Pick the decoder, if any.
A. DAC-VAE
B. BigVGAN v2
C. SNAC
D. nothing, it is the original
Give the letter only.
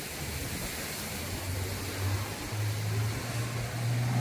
D